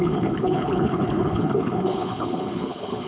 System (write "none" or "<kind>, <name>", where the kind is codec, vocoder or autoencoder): codec, HILCodec